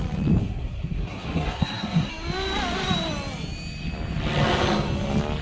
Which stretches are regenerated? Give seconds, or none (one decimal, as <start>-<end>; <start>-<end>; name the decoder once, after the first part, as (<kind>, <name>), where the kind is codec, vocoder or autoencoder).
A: 0.4-2.1 (codec, SNAC)